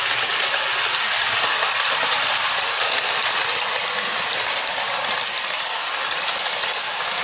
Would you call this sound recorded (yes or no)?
yes